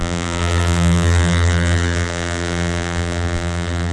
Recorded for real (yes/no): no